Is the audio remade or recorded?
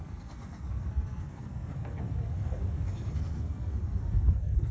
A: remade